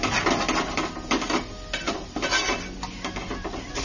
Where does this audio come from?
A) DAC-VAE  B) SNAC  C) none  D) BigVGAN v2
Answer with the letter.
C